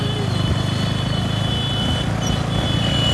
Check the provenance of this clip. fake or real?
real